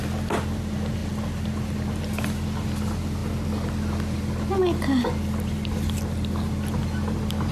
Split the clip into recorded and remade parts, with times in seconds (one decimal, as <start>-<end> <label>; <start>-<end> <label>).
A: 0.0-7.5 recorded